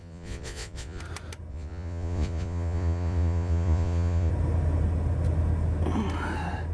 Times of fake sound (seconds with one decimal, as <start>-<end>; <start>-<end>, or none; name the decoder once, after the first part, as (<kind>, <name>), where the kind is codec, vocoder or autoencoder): 0.0-1.0 (vocoder, Vocos); 1.5-4.3